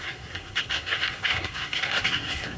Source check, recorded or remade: remade